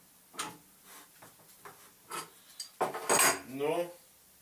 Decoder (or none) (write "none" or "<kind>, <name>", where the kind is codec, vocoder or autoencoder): none